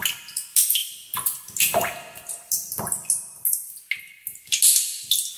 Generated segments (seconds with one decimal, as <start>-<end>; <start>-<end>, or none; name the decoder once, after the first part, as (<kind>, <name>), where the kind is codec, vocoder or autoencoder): none